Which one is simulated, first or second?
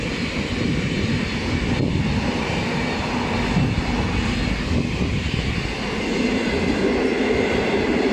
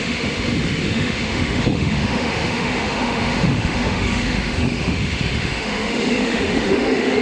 second